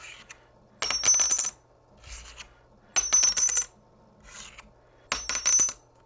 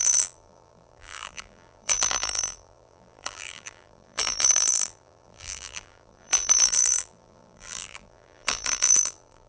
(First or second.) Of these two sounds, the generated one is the second